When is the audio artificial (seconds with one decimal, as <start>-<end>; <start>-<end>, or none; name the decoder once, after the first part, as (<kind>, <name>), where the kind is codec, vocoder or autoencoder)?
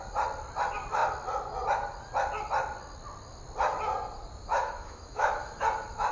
4.5-5.6 (autoencoder, DAC-VAE)